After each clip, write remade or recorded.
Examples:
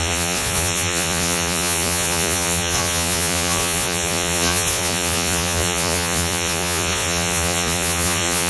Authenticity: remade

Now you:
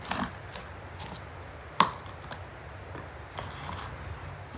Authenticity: recorded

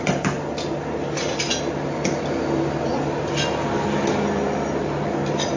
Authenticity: recorded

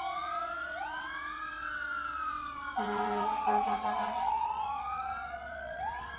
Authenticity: remade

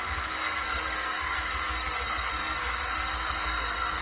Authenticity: remade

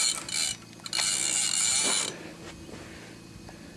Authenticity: recorded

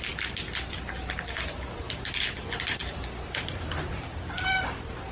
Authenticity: recorded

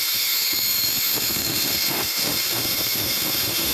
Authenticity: remade